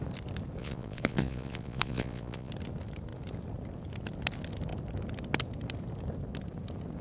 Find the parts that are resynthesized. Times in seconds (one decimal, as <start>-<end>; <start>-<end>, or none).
0.6-2.5